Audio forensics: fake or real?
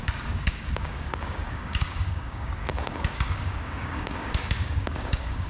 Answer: fake